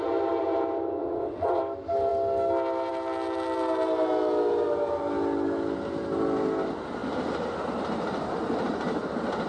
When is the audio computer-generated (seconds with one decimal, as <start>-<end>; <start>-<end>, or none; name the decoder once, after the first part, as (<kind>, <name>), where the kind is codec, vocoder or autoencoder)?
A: 1.0-1.6 (vocoder, WaveNeXt)